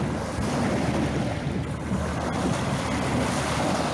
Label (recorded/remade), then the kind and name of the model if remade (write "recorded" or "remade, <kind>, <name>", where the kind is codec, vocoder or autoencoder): recorded